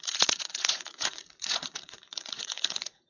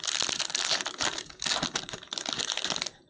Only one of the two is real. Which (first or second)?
second